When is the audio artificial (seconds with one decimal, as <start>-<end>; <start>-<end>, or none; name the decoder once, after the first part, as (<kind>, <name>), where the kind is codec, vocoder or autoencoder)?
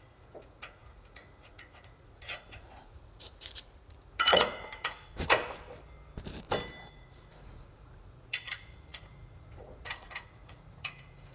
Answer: 0.0-5.4 (vocoder, Vocos); 6.9-11.3